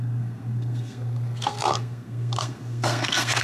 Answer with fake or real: fake